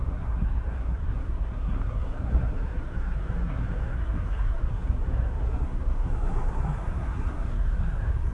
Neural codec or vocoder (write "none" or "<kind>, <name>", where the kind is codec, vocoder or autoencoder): codec, SNAC